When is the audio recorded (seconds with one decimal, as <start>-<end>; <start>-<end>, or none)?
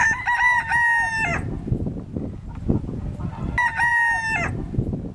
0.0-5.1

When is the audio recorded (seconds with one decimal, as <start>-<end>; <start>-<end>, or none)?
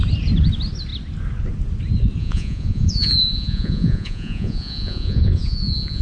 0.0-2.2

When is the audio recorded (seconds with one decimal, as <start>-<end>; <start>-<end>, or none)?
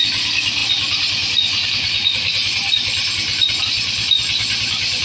0.0-5.0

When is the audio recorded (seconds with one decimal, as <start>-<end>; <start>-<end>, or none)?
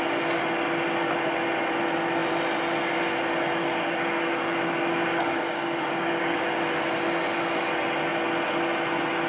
0.0-3.6; 6.4-9.3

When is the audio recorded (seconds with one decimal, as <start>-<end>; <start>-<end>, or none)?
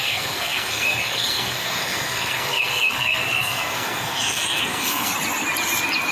5.1-6.1